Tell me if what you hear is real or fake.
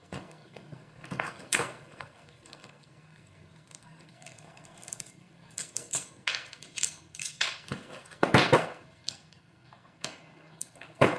fake